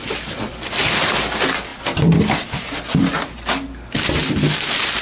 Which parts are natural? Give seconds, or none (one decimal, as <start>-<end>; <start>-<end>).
0.0-5.0